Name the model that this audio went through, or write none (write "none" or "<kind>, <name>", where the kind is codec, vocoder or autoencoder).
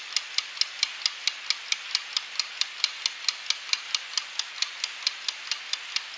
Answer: none